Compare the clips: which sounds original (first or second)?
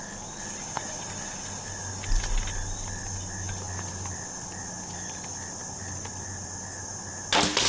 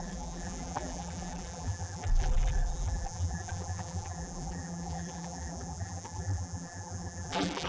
first